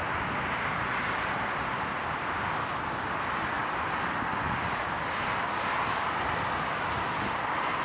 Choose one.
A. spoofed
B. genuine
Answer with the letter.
B